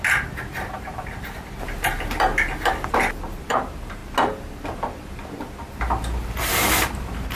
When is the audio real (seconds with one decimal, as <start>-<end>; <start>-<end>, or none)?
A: 2.3-3.4; 4.0-6.5